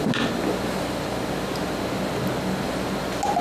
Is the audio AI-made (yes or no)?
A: no